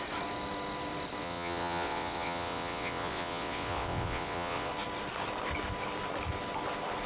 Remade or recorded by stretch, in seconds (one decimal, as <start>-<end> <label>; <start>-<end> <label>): 0.0-1.2 recorded; 1.2-4.7 remade; 4.7-7.1 recorded